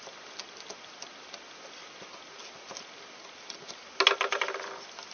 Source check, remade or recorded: recorded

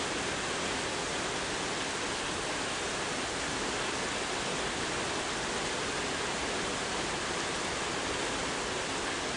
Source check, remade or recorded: recorded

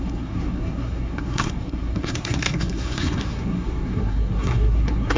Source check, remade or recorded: remade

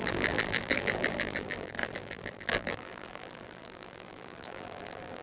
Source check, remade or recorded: remade